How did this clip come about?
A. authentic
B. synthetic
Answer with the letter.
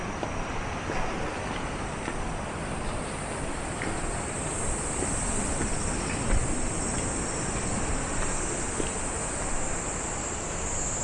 A